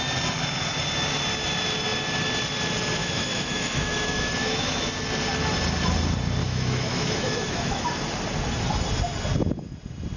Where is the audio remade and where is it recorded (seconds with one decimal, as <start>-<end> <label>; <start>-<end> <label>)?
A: 0.0-3.0 recorded; 3.0-4.9 remade; 4.9-6.4 recorded; 6.4-7.8 remade; 7.8-10.2 recorded